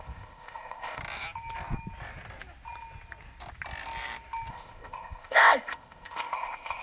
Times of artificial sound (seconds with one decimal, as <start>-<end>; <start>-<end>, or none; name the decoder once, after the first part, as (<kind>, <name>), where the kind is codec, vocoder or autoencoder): 0.0-1.0 (codec, ZipCodec); 4.5-6.8